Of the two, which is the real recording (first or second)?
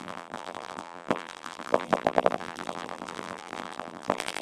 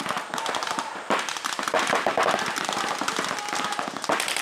second